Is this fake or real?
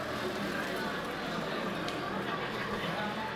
fake